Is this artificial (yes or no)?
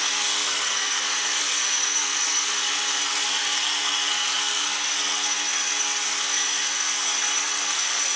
yes